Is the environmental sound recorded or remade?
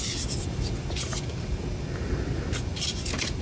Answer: recorded